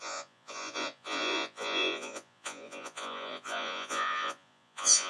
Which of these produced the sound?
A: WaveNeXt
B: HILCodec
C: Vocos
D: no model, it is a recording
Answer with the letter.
C